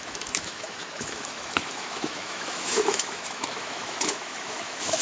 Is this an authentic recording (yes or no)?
no